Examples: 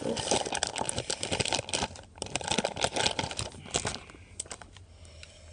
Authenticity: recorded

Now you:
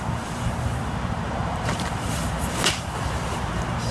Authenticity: remade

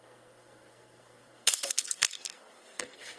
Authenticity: remade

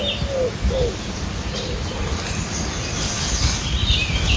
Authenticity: recorded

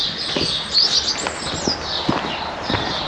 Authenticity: recorded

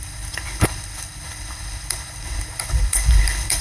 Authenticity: remade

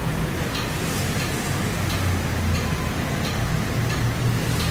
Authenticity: recorded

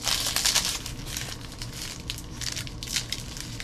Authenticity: recorded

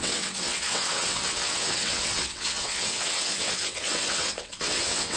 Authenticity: remade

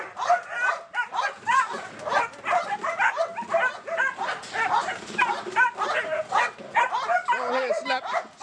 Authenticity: recorded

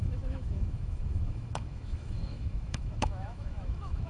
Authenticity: remade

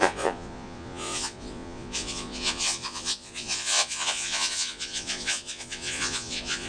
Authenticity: remade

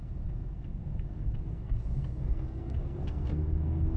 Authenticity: remade